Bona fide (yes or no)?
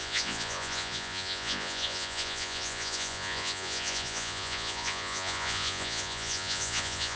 no